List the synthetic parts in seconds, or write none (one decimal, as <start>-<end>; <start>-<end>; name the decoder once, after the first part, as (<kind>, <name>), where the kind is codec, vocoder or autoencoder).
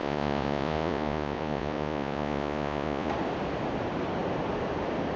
0.0-3.1 (vocoder, Vocos)